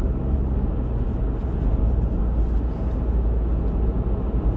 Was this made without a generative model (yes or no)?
yes